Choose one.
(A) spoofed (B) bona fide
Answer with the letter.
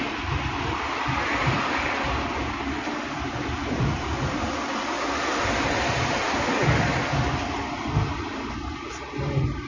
B